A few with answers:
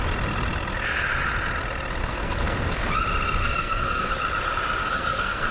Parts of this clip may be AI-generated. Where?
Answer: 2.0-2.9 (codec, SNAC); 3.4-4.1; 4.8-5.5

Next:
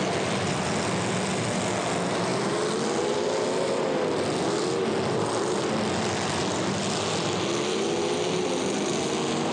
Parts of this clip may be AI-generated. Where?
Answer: none

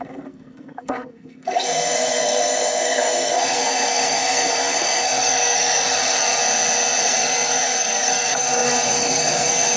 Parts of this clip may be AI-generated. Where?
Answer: 0.0-6.4 (codec, SNAC); 7.0-9.8